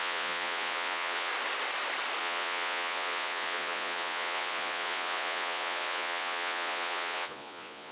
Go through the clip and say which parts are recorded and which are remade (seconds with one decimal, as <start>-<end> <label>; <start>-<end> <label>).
0.0-1.3 remade; 1.3-2.2 recorded; 2.2-7.9 remade